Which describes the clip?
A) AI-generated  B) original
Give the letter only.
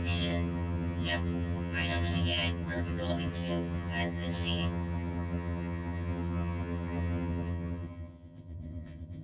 A